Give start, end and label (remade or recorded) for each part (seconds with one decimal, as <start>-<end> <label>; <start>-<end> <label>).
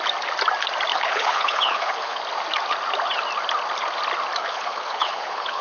0.0-0.9 recorded; 0.9-2.2 remade; 2.2-4.4 recorded; 4.4-5.6 remade